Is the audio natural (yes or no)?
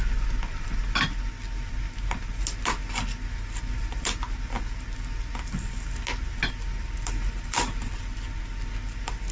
yes